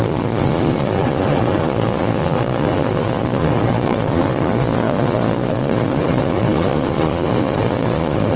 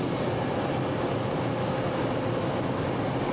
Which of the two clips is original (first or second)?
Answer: second